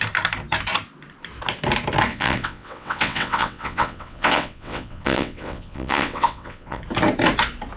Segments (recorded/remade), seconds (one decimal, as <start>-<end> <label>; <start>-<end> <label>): 0.0-2.1 recorded; 2.1-6.8 remade; 6.8-7.8 recorded